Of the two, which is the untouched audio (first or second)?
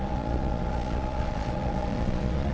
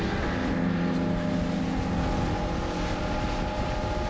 second